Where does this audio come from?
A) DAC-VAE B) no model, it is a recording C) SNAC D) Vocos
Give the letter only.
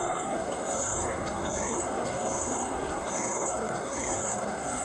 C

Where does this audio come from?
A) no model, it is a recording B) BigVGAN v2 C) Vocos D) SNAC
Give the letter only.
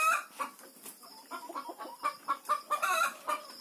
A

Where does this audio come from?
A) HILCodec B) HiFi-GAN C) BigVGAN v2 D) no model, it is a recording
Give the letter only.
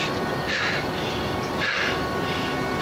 D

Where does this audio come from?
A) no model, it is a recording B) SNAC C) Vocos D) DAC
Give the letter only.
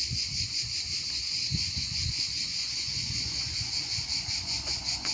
C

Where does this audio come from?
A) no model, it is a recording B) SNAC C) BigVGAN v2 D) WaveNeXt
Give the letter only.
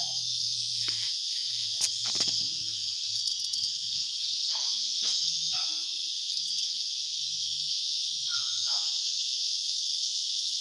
B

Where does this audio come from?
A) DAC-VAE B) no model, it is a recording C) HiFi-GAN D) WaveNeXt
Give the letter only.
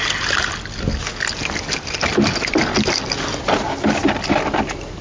B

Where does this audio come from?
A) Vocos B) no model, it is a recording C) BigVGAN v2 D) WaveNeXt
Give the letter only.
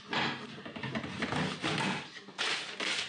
B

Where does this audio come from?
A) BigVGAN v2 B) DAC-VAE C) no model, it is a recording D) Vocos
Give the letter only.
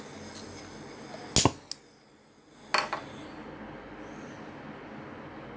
C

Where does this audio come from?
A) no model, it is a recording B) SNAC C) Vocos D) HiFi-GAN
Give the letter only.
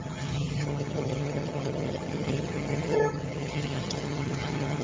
D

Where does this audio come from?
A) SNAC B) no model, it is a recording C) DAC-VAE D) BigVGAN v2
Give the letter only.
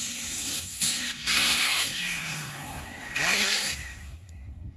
A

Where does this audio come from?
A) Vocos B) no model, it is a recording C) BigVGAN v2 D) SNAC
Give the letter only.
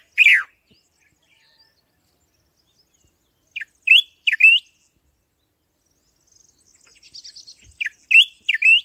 B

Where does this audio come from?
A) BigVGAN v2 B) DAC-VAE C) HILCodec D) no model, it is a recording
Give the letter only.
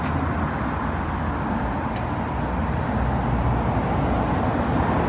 D